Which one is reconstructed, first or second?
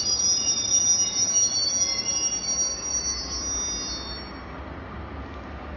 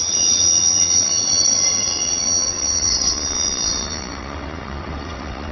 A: second